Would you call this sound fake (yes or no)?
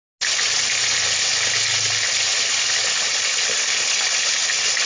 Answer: no